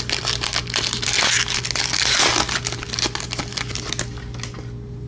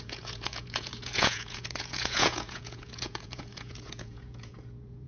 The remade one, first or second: second